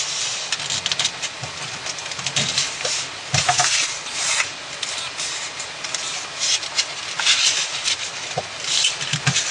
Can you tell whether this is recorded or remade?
recorded